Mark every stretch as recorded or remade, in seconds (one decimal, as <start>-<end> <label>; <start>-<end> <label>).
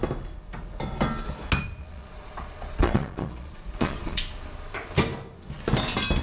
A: 0.0-1.8 recorded; 1.8-4.2 remade; 4.2-6.2 recorded